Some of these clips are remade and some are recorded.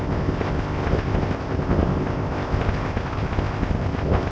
remade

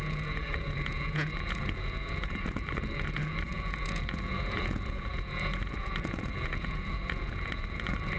remade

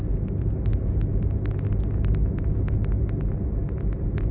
recorded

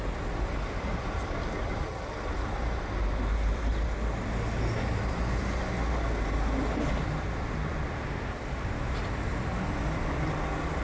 recorded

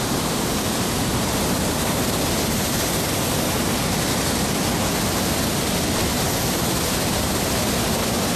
recorded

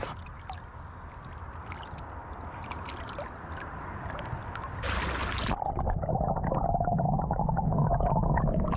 recorded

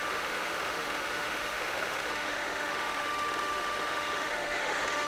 remade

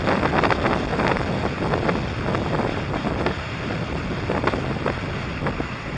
recorded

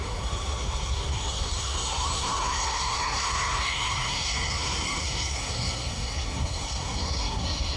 remade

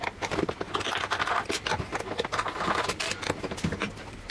recorded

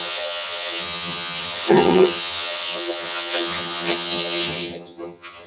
remade